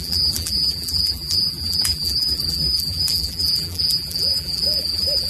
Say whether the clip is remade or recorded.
remade